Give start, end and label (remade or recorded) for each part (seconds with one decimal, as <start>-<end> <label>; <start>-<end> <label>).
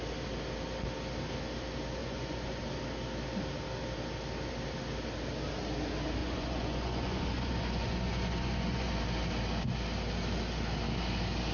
0.0-2.0 recorded; 2.0-2.6 remade; 2.6-6.2 recorded; 6.2-8.9 remade; 8.9-11.5 recorded